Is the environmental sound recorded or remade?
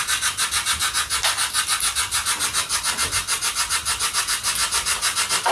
recorded